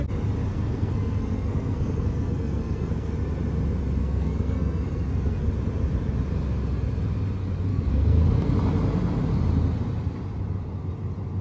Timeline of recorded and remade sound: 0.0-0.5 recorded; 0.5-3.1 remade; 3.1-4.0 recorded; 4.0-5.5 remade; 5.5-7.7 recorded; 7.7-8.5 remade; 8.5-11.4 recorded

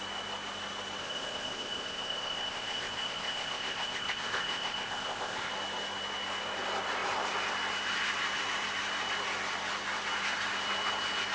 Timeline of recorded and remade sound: 0.0-1.0 recorded; 1.0-5.5 remade; 5.5-11.3 recorded

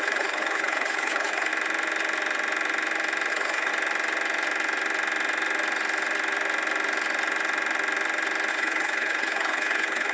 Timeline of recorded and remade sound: 0.0-1.5 remade; 1.5-3.3 recorded; 3.3-3.7 remade; 3.7-8.5 recorded; 8.5-10.1 remade

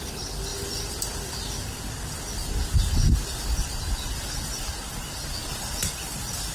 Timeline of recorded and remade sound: 0.0-6.5 recorded

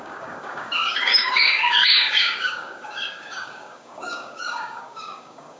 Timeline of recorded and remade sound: 0.0-5.6 remade

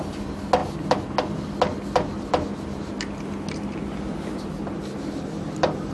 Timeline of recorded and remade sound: 0.0-5.9 recorded

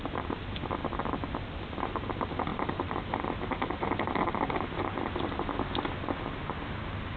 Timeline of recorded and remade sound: 0.0-7.2 recorded

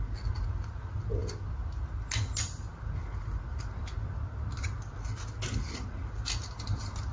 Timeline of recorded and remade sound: 0.0-7.1 recorded